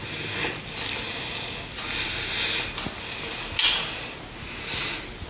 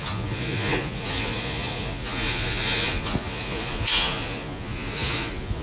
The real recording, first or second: first